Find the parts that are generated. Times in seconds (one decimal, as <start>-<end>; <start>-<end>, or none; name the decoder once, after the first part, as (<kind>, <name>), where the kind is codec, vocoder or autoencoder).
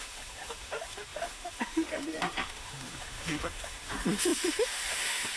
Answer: 0.0-5.4 (autoencoder, DAC-VAE)